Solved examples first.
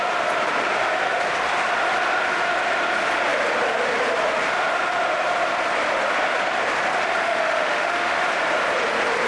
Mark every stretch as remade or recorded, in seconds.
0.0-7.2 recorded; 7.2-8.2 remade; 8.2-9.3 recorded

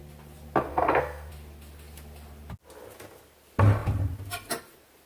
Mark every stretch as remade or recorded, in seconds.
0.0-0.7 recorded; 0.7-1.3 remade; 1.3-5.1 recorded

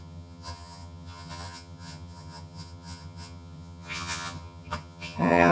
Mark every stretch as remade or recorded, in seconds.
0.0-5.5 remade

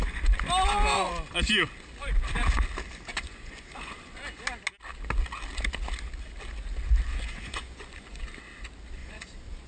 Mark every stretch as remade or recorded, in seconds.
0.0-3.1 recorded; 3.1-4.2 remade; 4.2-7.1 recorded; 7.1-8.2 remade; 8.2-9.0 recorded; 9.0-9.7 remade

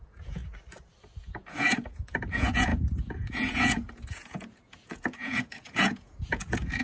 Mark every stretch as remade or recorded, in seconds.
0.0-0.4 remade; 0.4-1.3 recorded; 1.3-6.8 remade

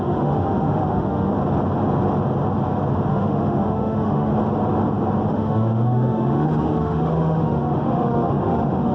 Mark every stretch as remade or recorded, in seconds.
0.0-1.3 remade; 1.3-3.1 recorded; 3.1-4.3 remade; 4.3-5.3 recorded; 5.3-8.9 remade